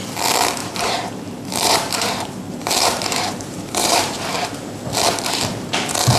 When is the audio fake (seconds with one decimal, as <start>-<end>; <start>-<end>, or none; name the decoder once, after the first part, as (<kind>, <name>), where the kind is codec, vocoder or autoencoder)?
0.6-4.3 (vocoder, BigVGAN v2)